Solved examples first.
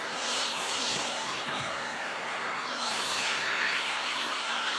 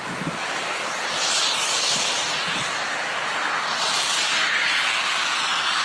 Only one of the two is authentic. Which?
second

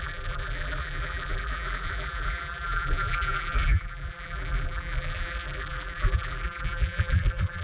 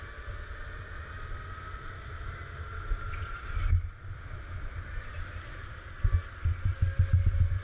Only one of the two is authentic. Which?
second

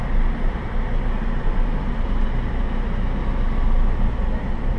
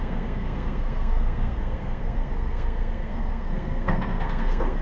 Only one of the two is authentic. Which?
first